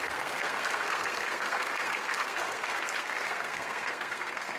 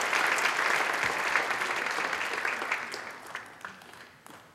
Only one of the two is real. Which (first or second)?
second